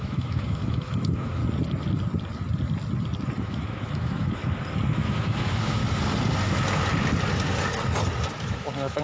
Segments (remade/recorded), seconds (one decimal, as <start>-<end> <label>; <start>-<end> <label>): 0.0-1.4 remade; 1.4-3.4 recorded; 3.4-4.4 remade; 4.4-4.9 recorded; 4.9-5.8 remade; 5.8-8.4 recorded; 8.4-9.0 remade